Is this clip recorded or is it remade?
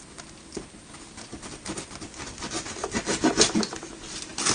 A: recorded